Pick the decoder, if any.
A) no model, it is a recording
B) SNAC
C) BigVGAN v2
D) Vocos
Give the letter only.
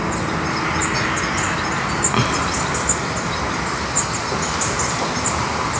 A